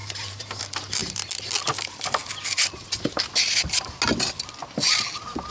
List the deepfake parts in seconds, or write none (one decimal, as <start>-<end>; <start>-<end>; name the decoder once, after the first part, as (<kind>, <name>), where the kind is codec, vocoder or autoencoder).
0.0-0.6 (vocoder, BigVGAN v2)